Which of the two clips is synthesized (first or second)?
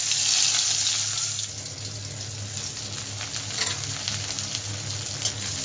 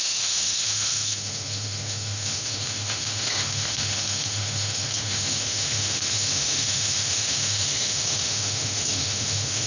second